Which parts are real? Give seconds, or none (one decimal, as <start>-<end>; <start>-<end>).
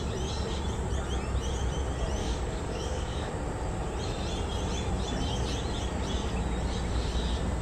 0.0-2.2; 3.3-7.6